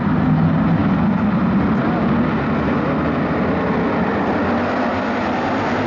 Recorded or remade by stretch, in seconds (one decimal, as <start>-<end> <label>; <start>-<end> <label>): 0.0-5.9 recorded